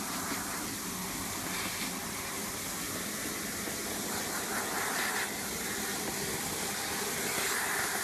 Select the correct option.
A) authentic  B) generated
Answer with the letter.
A